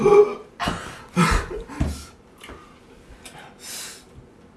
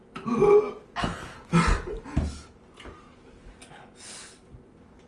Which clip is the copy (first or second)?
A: first